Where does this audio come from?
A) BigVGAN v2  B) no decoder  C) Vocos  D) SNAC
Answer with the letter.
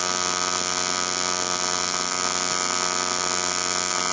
A